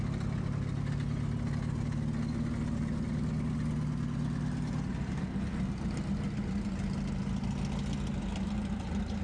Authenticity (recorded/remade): recorded